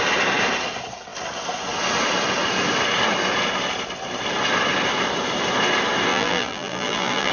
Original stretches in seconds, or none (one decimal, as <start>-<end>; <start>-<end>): 0.0-6.1